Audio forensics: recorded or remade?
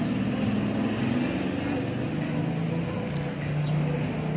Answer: recorded